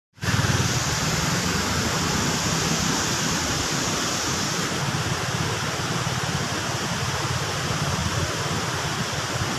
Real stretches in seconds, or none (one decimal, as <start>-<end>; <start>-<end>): 0.0-9.6